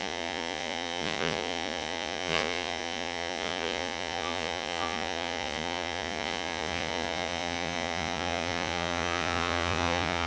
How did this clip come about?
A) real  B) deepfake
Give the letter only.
B